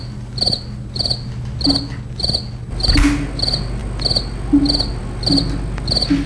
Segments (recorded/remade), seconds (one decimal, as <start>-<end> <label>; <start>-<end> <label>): 0.0-6.3 recorded